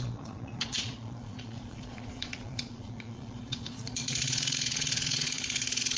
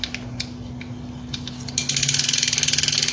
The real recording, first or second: second